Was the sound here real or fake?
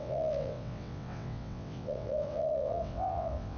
fake